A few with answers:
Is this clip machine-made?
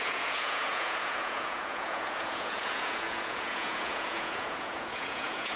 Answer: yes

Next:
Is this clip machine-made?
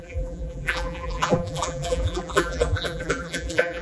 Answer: yes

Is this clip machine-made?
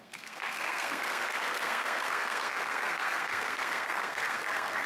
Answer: yes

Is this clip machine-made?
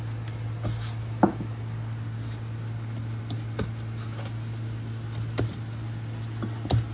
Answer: no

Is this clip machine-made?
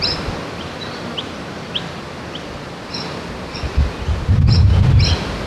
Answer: yes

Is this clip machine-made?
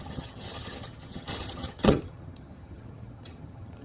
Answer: yes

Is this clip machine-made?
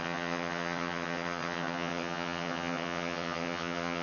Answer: yes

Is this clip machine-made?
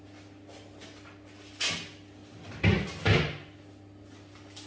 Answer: no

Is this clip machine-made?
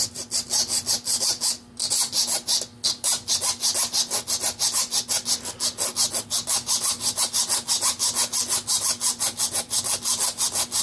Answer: no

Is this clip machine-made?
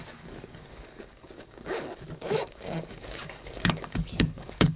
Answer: yes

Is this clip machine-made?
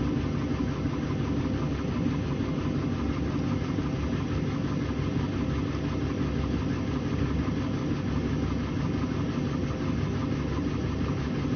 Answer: no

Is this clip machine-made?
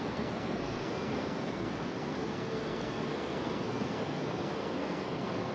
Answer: yes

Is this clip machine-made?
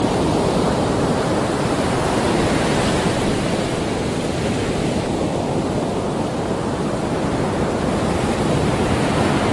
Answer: no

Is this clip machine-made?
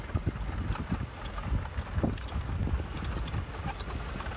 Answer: no